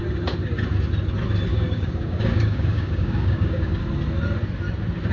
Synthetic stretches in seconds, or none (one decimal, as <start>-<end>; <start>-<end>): 1.5-3.8